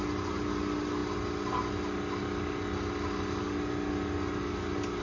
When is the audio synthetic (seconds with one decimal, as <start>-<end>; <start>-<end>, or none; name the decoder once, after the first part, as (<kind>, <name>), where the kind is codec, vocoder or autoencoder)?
none